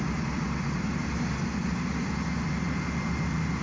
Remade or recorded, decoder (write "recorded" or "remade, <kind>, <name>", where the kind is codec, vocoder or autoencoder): recorded